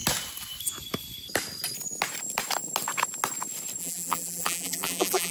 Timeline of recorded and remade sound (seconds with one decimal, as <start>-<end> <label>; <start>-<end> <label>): 0.0-3.8 recorded; 3.8-5.3 remade

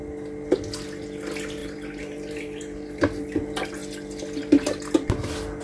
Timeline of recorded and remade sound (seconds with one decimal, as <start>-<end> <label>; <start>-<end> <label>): 0.0-1.6 recorded; 1.6-3.0 remade; 3.0-5.6 recorded

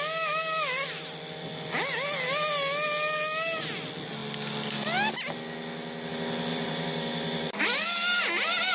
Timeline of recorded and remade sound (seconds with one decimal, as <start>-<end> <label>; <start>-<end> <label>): 0.0-6.5 recorded; 6.5-8.2 remade; 8.2-8.7 recorded

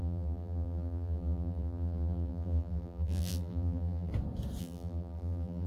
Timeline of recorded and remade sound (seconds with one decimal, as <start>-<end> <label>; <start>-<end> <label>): 0.0-4.1 remade; 4.1-4.6 recorded; 4.6-5.7 remade

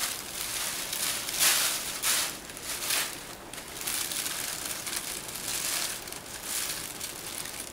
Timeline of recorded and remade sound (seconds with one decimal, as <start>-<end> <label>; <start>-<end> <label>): 0.0-1.5 recorded; 1.5-3.2 remade; 3.2-7.7 recorded

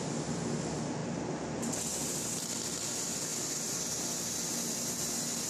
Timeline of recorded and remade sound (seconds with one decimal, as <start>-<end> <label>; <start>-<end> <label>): 0.0-5.5 recorded

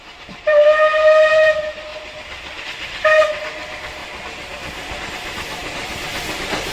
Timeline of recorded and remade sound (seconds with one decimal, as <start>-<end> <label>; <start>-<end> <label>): 0.0-6.7 recorded